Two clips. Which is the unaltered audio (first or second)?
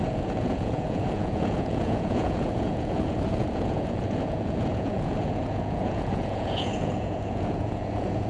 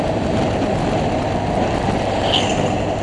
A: second